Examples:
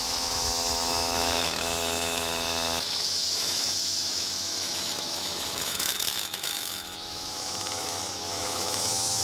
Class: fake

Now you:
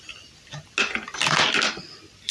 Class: real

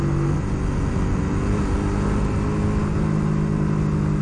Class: real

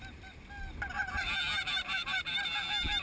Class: real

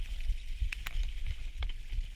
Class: real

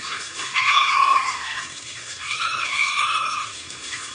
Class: fake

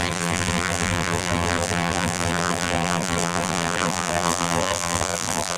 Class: fake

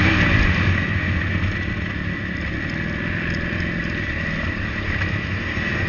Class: real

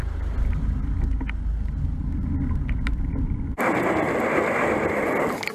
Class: real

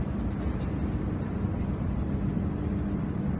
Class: real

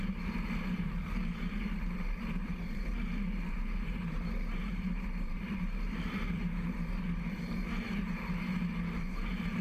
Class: fake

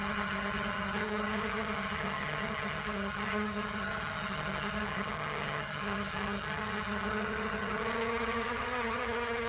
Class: fake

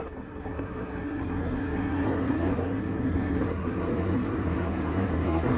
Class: fake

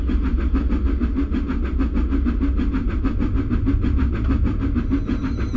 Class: real